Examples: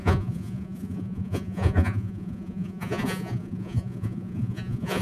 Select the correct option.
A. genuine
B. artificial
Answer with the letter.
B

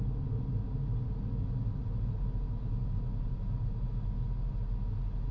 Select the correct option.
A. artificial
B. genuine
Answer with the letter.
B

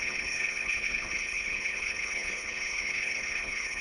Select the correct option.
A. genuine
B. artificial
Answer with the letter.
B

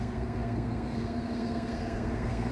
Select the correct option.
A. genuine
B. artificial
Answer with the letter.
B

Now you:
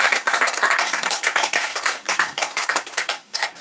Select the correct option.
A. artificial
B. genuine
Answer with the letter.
A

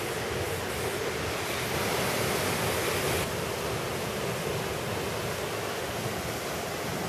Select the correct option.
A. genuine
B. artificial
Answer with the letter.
A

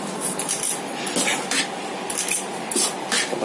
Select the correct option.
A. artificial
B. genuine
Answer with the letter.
B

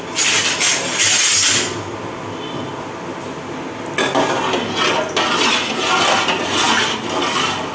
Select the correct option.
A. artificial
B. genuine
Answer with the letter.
B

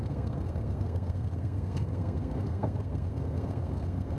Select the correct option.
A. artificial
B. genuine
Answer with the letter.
A